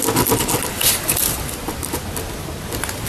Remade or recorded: recorded